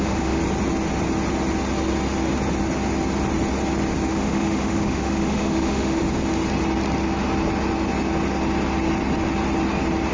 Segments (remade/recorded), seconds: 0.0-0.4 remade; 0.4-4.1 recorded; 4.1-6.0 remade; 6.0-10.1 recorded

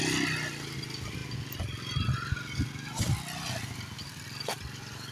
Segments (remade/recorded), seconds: 0.0-5.1 recorded

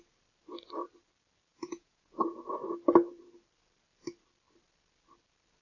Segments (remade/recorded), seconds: 0.0-1.5 recorded; 1.5-2.5 remade; 2.5-5.6 recorded

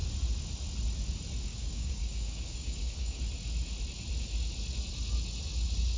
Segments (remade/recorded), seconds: 0.0-1.5 recorded; 1.5-3.2 remade; 3.2-6.0 recorded

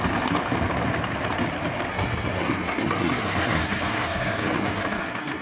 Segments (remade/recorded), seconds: 0.0-1.9 recorded; 1.9-5.4 remade

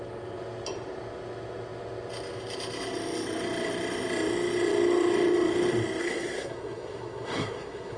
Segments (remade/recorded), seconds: 0.0-6.0 recorded; 6.0-8.0 remade

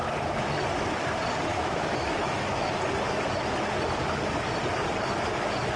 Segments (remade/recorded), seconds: 0.0-1.5 recorded; 1.5-2.8 remade; 2.8-5.8 recorded

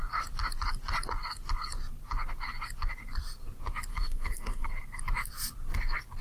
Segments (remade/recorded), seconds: 0.0-3.9 recorded; 3.9-4.7 remade; 4.7-6.2 recorded